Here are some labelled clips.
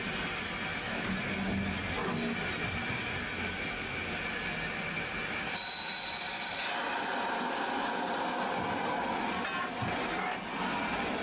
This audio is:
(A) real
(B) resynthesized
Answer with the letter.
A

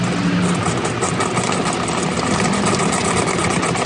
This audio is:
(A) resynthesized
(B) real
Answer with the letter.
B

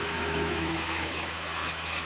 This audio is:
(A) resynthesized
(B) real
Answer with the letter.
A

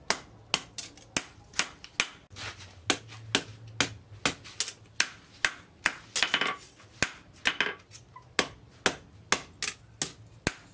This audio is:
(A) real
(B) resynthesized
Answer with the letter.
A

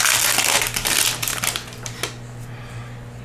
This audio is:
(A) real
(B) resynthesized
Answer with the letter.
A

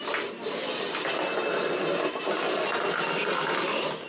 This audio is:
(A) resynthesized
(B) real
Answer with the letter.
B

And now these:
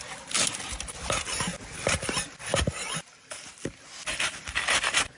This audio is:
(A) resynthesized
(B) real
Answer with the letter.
B